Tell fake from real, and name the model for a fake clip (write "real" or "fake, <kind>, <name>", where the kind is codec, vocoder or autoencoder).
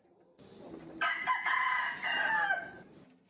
real